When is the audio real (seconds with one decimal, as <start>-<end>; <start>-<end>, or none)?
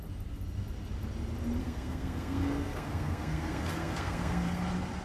0.0-1.6; 4.6-5.0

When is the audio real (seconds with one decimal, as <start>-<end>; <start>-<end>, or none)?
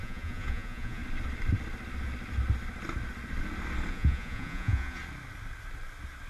1.0-3.9; 5.0-6.3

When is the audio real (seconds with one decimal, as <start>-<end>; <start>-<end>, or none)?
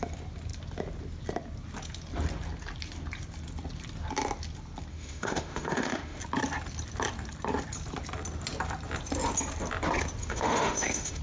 0.0-4.9; 6.2-10.2